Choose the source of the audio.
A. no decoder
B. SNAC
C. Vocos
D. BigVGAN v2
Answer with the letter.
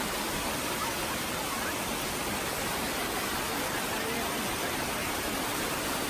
A